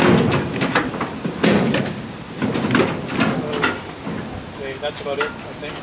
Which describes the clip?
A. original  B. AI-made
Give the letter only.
A